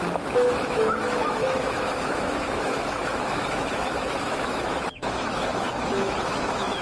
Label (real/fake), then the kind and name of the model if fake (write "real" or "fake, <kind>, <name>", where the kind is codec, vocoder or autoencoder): fake, autoencoder, DAC-VAE